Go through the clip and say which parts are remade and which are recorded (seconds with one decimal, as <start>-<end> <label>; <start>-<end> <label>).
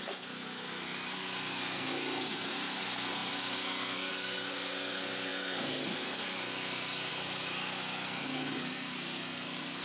0.0-9.8 remade